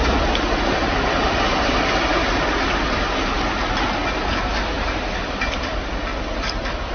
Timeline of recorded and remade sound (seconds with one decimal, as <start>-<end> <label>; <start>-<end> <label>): 0.0-6.9 recorded